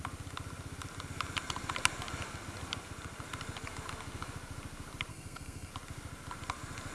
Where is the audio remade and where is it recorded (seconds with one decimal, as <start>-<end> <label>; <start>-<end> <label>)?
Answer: 0.0-5.1 recorded; 5.1-5.7 remade; 5.7-6.9 recorded